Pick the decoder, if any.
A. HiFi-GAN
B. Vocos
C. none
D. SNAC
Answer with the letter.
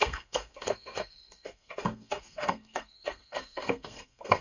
D